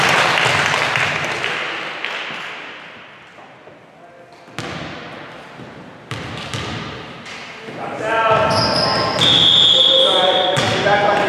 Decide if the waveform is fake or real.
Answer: real